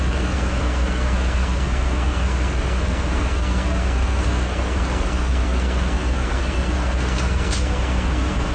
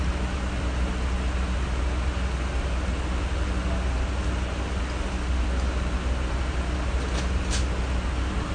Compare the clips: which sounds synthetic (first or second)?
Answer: first